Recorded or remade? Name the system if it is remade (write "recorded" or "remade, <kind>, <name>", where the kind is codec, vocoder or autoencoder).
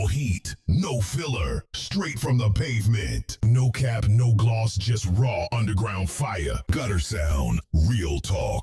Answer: recorded